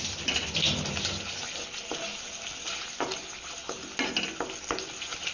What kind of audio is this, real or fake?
real